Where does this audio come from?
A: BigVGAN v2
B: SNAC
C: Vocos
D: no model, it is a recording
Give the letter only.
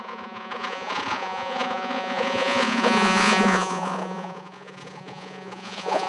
C